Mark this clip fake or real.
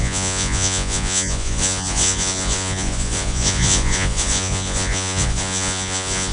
fake